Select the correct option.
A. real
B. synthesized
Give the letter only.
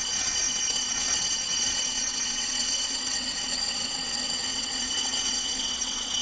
B